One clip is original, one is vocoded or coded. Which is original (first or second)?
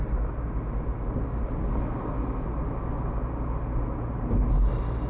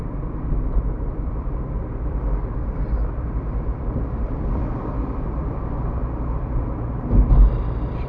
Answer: first